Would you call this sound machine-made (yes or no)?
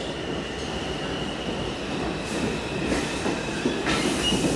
no